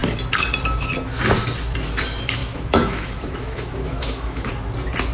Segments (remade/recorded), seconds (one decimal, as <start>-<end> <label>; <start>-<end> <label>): 0.0-2.4 recorded; 2.4-4.5 remade; 4.5-5.1 recorded

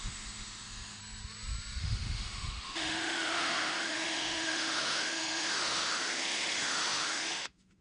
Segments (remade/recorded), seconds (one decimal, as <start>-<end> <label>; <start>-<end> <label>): 0.0-1.0 remade; 1.0-1.8 recorded; 1.8-7.8 remade